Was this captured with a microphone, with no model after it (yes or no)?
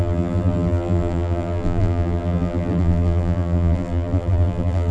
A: no